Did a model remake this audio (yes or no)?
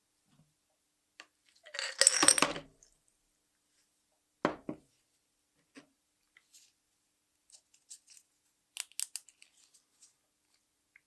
no